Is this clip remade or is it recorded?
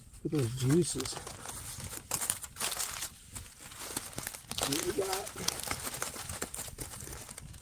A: recorded